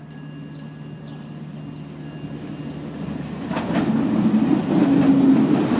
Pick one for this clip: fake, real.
real